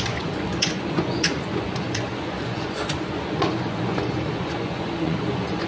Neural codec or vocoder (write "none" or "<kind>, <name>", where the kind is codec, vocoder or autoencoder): vocoder, Vocos